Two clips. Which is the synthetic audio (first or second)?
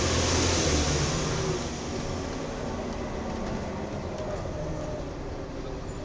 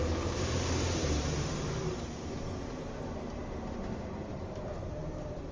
second